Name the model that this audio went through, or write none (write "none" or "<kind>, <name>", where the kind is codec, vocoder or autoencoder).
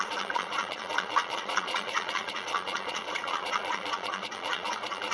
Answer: vocoder, Vocos